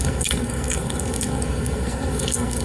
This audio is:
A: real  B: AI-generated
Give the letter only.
B